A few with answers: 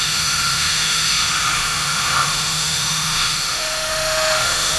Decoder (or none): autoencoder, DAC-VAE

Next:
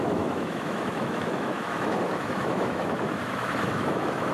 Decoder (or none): autoencoder, DAC-VAE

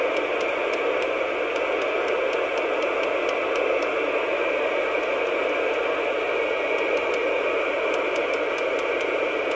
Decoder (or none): none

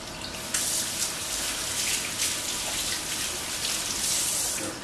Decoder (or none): none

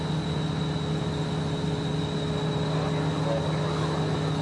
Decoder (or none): none